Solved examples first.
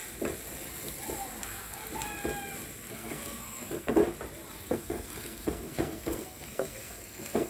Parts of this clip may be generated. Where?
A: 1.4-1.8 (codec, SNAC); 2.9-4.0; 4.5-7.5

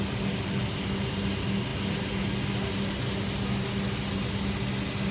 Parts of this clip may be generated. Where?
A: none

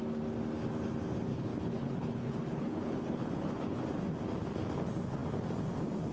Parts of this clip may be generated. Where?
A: 1.3-3.8 (codec, HILCodec)

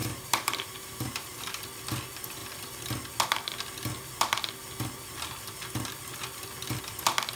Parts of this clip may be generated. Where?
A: 0.0-1.4 (vocoder, BigVGAN v2)

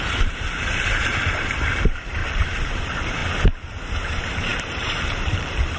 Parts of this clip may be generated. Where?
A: 0.0-3.2 (vocoder, BigVGAN v2); 3.9-5.8